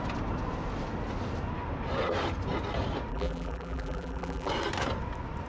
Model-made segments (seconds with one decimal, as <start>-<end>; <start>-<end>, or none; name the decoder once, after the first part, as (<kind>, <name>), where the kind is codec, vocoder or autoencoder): 3.1-4.5 (vocoder, BigVGAN v2)